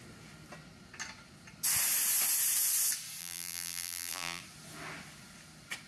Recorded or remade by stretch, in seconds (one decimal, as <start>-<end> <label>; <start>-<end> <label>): 0.0-3.2 recorded; 3.2-4.4 remade; 4.4-5.9 recorded